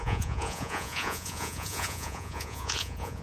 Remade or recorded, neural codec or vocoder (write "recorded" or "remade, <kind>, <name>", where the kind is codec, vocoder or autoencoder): remade, vocoder, Vocos